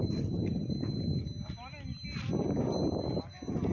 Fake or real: real